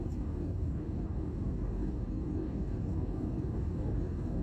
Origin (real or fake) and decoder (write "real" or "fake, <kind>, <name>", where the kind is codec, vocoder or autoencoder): fake, codec, DAC